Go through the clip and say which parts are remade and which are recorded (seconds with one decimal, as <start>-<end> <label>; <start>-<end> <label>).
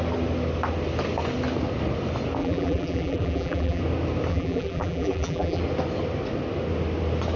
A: 0.0-2.4 recorded; 2.4-3.8 remade; 3.8-4.3 recorded; 4.3-5.6 remade; 5.6-7.4 recorded